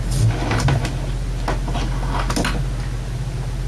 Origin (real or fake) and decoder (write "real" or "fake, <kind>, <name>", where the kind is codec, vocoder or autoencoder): real